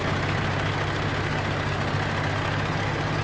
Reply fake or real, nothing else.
real